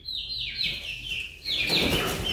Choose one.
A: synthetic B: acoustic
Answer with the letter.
B